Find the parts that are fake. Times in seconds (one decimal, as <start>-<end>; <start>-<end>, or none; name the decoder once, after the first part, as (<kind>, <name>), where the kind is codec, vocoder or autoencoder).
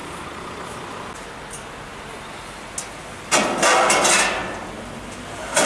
none